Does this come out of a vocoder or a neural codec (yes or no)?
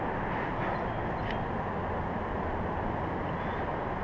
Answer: no